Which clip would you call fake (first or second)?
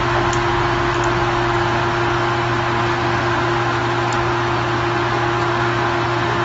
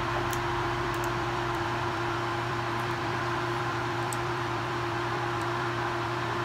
second